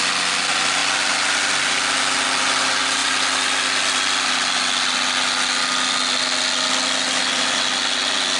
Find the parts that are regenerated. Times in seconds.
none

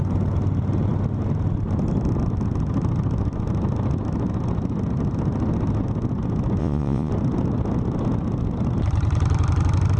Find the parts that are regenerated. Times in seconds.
6.6-7.1 (vocoder, Vocos)

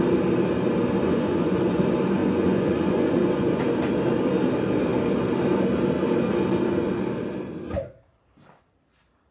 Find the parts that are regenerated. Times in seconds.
1.1-1.8 (vocoder, Vocos); 2.2-3.6

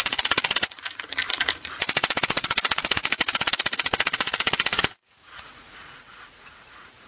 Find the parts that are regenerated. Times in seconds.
0.0-7.1 (vocoder, Vocos)

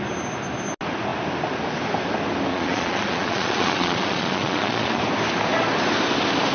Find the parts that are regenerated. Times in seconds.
2.5-5.0 (vocoder, Vocos)